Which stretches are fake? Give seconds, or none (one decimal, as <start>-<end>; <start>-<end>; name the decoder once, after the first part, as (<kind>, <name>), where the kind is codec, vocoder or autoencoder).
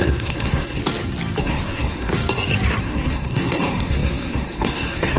0.0-0.8 (codec, SNAC); 1.4-2.1; 2.8-5.2